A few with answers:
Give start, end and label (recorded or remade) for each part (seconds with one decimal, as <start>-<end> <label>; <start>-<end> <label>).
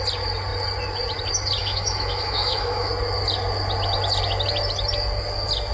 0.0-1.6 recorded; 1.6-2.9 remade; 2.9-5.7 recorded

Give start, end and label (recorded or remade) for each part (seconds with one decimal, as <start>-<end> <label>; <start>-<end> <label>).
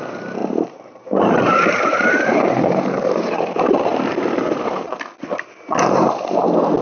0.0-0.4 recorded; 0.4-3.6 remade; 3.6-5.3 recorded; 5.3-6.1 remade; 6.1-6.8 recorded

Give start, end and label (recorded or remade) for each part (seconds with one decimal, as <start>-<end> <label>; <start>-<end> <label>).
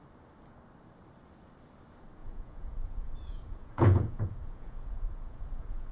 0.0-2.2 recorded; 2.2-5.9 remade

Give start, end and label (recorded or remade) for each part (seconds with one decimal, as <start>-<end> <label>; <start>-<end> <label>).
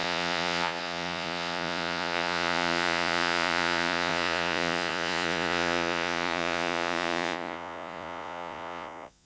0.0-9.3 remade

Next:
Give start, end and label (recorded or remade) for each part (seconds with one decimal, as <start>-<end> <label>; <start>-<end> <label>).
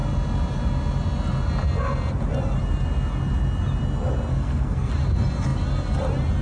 0.0-4.3 recorded; 4.3-4.9 remade; 4.9-6.4 recorded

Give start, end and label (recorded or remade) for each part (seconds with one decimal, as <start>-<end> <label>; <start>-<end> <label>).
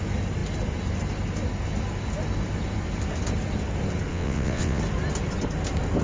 0.0-4.1 recorded; 4.1-4.8 remade; 4.8-6.0 recorded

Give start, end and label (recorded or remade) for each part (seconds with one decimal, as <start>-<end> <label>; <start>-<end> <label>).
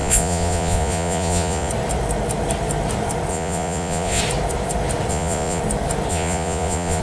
0.0-1.7 remade; 1.7-3.3 recorded; 3.3-4.2 remade; 4.2-5.1 recorded; 5.1-5.6 remade; 5.6-6.1 recorded; 6.1-7.0 remade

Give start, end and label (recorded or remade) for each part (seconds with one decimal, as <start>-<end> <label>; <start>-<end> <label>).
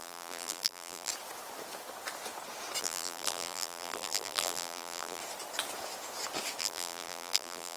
0.0-1.1 remade; 1.1-2.8 recorded; 2.8-5.2 remade; 5.2-6.6 recorded; 6.6-7.8 remade